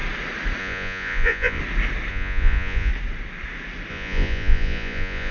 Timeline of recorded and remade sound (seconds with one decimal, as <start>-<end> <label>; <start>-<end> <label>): 0.0-0.6 recorded; 0.6-1.6 remade; 1.6-2.1 recorded; 2.1-2.9 remade; 2.9-3.9 recorded; 3.9-5.3 remade